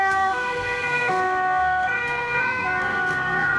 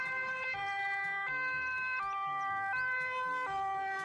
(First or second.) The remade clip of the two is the first